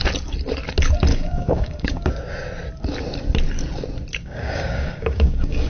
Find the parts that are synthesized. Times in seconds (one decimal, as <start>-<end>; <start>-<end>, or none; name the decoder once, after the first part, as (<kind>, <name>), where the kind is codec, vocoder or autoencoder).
1.1-2.1 (codec, DAC); 4.2-5.7